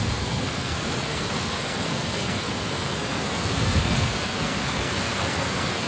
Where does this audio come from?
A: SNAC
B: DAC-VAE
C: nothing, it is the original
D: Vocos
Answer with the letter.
A